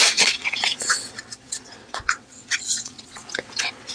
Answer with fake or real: fake